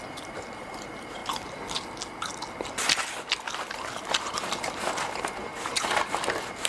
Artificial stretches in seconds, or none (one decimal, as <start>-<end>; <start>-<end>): 0.0-1.2; 4.1-6.7